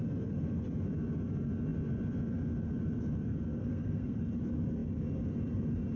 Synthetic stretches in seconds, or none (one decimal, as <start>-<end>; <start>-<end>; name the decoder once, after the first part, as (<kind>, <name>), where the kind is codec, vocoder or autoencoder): 3.6-4.2 (codec, SNAC)